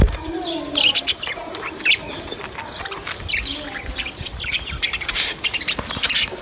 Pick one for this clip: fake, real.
real